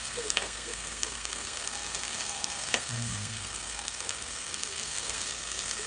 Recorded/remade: remade